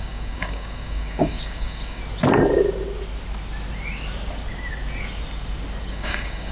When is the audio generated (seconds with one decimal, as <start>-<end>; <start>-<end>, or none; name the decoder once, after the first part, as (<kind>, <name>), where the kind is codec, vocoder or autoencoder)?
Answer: 0.0-2.0 (codec, DAC); 5.9-6.5